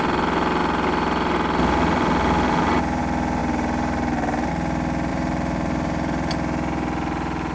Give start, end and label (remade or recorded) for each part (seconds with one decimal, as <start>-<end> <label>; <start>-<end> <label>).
0.0-5.1 recorded; 5.1-6.3 remade; 6.3-7.5 recorded